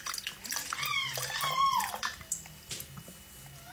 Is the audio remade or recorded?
remade